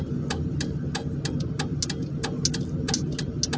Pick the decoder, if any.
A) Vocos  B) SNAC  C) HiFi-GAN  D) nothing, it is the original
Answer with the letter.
D